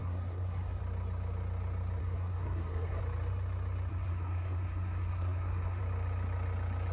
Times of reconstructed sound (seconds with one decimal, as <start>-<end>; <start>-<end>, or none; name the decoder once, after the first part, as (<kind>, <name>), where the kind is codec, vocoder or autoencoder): 0.0-0.8 (codec, SNAC); 2.0-3.0; 3.9-5.8